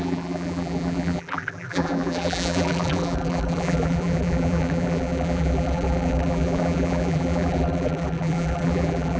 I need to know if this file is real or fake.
fake